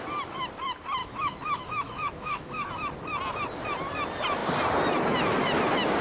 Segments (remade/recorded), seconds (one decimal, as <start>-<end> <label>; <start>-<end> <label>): 0.0-1.0 recorded; 1.0-2.7 remade; 2.7-6.0 recorded